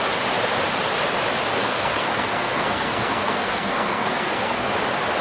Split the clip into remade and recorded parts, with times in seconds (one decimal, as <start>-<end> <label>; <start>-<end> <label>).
0.0-1.6 recorded; 1.6-4.7 remade; 4.7-5.2 recorded